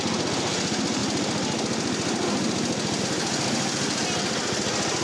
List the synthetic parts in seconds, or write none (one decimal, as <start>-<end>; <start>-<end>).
none